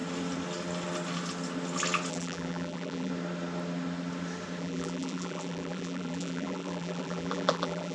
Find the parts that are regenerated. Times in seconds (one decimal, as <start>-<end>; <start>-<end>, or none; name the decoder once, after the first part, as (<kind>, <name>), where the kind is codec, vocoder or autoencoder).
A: 2.1-3.1 (vocoder, BigVGAN v2); 4.6-7.9